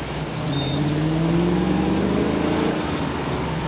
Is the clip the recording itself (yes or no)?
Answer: no